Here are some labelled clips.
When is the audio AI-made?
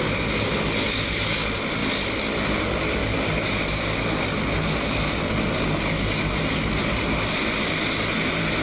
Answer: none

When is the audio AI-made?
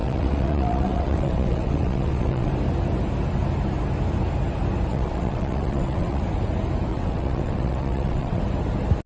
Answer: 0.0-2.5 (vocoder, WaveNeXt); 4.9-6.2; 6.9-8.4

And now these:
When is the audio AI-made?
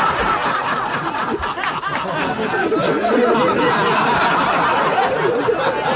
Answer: none